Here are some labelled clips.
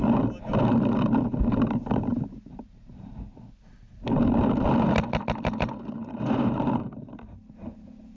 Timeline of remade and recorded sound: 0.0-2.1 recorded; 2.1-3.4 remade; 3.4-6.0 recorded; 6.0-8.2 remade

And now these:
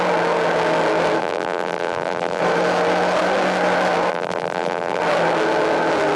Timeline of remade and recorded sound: 0.0-1.2 recorded; 1.2-2.4 remade; 2.4-4.1 recorded; 4.1-5.0 remade; 5.0-6.2 recorded

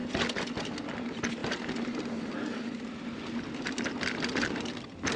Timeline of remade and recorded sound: 0.0-0.7 remade; 0.7-5.2 recorded

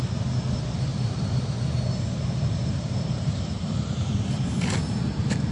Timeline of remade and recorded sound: 0.0-0.9 recorded; 0.9-1.6 remade; 1.6-2.6 recorded; 2.6-4.4 remade; 4.4-5.5 recorded

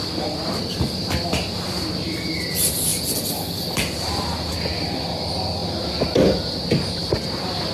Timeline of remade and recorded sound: 0.0-7.7 recorded

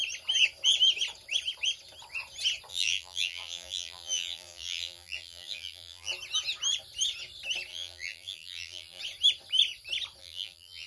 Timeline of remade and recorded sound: 0.0-2.7 recorded; 2.7-6.1 remade; 6.1-7.7 recorded; 7.7-9.0 remade; 9.0-10.2 recorded; 10.2-10.9 remade